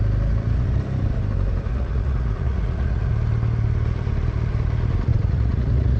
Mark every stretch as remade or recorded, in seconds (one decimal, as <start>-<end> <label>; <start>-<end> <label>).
0.0-1.7 recorded; 1.7-3.1 remade; 3.1-5.1 recorded; 5.1-6.0 remade